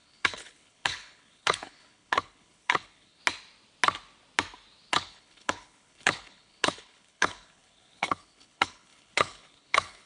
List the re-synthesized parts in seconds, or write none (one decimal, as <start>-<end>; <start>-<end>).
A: 0.0-3.2; 4.9-10.1